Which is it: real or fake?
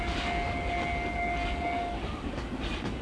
fake